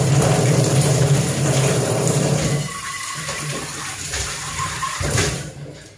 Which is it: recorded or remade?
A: remade